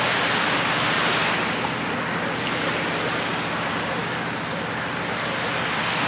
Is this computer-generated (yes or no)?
no